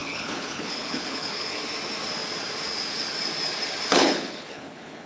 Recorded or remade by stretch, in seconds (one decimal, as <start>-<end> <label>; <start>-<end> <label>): 0.0-1.6 remade; 1.6-3.9 recorded; 3.9-5.1 remade